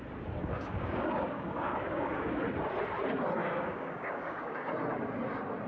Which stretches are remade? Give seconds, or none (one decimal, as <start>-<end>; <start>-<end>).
0.4-2.4; 3.4-4.7